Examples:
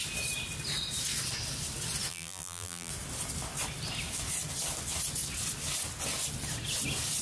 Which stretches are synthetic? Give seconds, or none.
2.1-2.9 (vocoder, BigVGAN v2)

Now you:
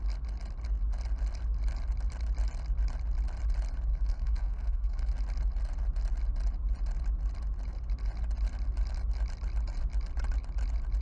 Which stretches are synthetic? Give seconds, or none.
3.9-5.1 (codec, SNAC)

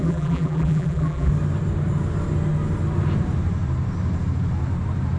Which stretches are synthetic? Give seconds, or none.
0.0-1.3 (vocoder, BigVGAN v2)